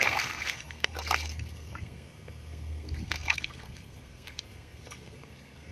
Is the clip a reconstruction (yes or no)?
yes